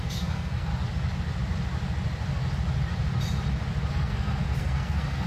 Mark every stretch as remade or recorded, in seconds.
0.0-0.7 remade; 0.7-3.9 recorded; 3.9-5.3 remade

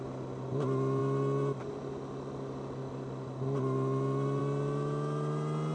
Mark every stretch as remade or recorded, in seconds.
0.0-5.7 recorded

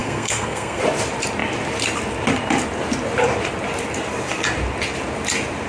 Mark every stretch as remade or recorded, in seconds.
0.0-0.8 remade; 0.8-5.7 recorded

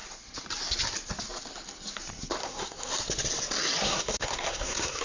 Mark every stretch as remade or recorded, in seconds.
0.0-2.4 recorded; 2.4-2.9 remade; 2.9-3.8 recorded; 3.8-5.0 remade